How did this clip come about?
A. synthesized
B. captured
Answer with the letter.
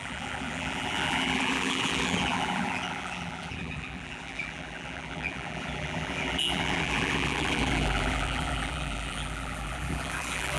A